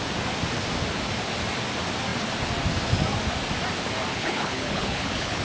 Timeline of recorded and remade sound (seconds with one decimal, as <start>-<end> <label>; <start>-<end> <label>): 0.0-4.1 recorded; 4.1-5.4 remade